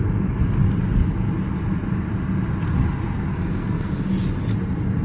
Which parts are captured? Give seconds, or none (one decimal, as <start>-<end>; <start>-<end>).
0.0-3.3; 3.9-5.0